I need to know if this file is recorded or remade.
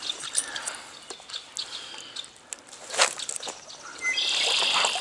recorded